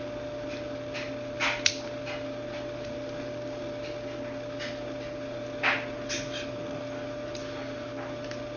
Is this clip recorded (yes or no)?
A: yes